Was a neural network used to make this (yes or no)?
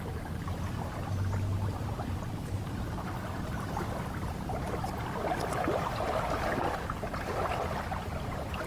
no